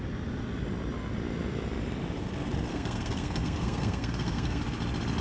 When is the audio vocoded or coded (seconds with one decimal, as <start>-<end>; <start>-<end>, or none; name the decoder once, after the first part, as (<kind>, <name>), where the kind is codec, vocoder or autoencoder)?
2.7-4.6 (codec, SNAC)